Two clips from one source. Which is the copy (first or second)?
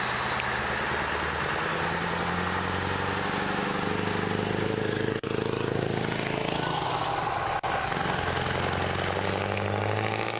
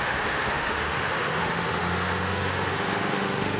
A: second